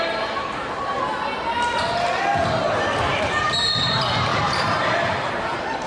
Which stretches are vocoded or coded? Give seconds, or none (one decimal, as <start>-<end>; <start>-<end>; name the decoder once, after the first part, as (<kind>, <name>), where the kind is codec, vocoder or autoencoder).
none